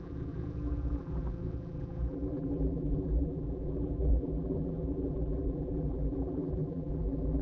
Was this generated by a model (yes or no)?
yes